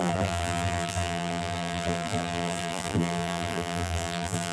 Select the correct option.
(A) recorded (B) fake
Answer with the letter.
B